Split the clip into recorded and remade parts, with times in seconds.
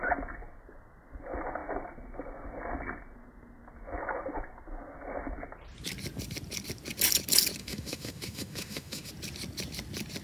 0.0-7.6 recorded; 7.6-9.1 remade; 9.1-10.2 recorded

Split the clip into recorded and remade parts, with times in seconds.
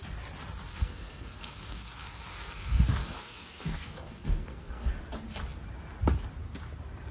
0.0-0.7 recorded; 0.7-5.0 remade; 5.0-7.1 recorded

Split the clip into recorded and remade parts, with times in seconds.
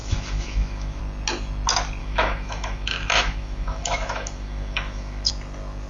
0.0-1.0 remade; 1.0-2.0 recorded; 2.0-5.3 remade; 5.3-5.9 recorded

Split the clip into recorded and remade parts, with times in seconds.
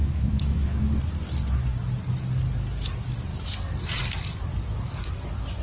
0.0-0.8 remade; 0.8-5.6 recorded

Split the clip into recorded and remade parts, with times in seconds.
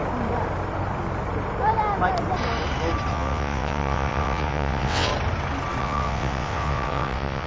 0.0-3.1 recorded; 3.1-5.1 remade; 5.1-5.8 recorded; 5.8-7.5 remade